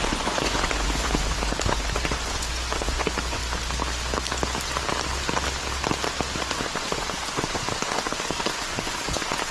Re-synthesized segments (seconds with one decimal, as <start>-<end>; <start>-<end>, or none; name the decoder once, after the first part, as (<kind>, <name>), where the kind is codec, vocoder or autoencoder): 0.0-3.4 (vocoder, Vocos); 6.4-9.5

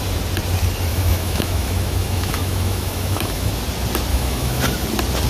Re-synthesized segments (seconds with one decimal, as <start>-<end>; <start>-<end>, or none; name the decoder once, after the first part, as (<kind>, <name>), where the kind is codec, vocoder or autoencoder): 0.9-3.5 (autoencoder, DAC-VAE); 4.1-4.6

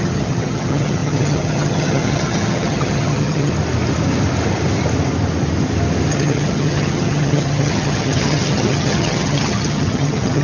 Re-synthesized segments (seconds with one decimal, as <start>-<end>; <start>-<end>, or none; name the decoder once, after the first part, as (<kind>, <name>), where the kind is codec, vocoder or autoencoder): 0.0-3.5 (vocoder, HiFi-GAN); 6.1-10.4

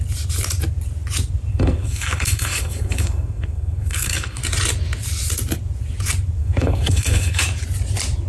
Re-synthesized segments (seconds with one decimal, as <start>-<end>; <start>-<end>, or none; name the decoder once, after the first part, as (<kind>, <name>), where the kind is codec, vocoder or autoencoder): 1.5-4.4 (codec, SNAC); 6.4-7.4